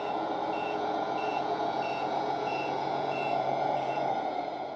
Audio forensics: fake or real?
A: fake